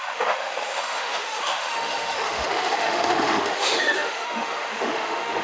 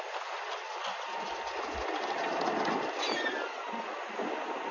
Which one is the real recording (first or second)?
second